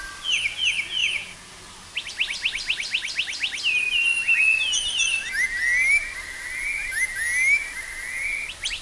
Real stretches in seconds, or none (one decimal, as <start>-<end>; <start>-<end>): 0.0-1.0; 1.6-8.8